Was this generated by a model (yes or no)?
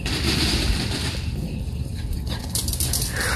yes